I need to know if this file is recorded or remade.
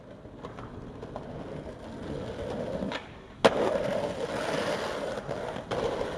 recorded